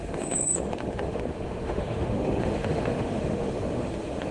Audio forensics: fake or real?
fake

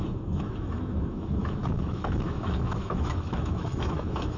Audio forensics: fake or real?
fake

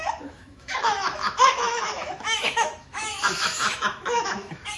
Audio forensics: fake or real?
fake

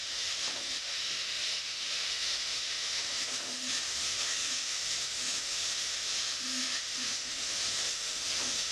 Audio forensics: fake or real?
fake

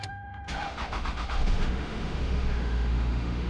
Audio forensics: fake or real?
fake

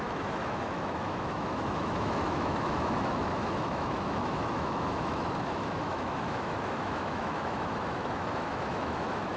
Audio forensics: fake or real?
fake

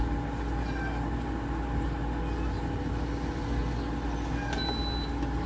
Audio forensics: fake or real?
real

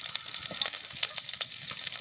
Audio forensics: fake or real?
real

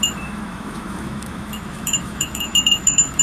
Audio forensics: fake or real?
fake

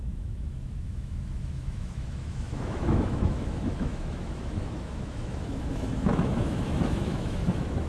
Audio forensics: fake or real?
fake